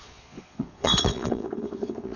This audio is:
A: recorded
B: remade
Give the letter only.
B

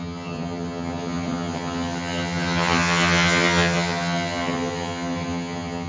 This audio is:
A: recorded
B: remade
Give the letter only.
B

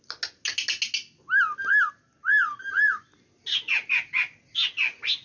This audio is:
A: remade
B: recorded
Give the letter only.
B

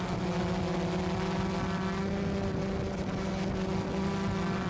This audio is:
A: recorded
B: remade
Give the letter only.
A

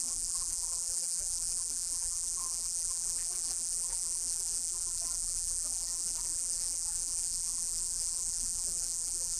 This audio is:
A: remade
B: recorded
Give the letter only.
A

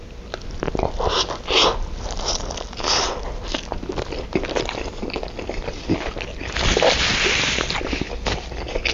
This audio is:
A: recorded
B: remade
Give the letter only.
A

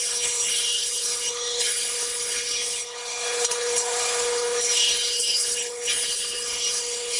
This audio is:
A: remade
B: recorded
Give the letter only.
A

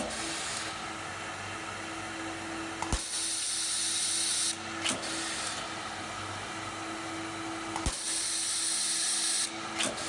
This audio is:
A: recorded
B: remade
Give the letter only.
A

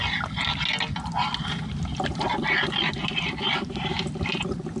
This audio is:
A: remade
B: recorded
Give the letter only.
B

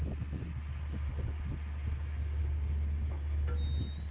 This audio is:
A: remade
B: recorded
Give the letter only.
B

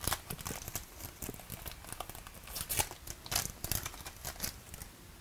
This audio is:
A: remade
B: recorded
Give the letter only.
B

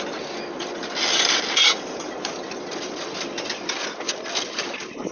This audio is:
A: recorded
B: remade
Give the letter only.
A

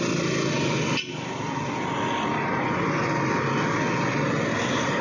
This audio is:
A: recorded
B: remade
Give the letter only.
A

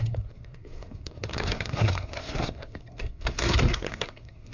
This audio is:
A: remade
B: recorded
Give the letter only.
A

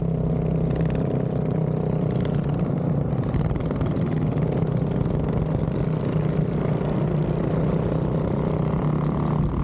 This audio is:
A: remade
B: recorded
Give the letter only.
B